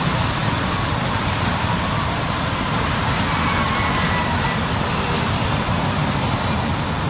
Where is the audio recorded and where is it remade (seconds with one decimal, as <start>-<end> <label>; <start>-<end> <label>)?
0.0-7.1 recorded